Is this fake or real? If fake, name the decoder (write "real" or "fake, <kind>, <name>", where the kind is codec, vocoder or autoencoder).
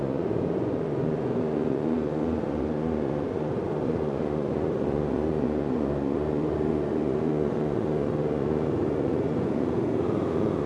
fake, vocoder, Vocos